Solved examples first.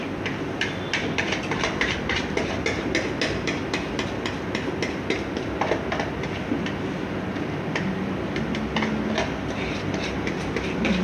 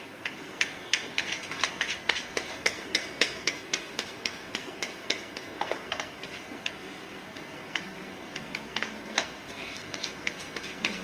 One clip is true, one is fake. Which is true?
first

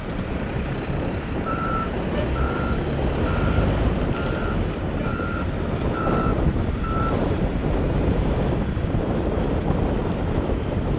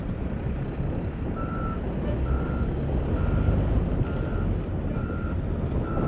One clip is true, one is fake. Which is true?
second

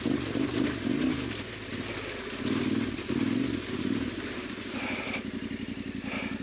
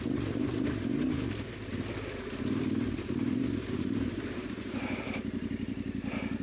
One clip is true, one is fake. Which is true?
first